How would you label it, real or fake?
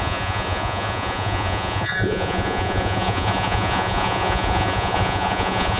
fake